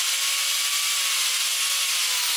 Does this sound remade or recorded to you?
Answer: recorded